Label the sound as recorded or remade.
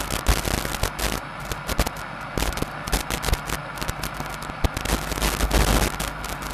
recorded